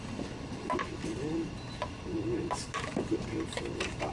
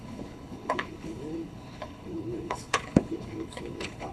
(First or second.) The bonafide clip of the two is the first